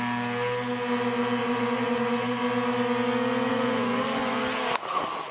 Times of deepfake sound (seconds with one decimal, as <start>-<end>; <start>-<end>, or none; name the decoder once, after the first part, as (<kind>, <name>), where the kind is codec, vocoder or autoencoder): 1.4-2.4 (vocoder, Vocos); 3.5-4.4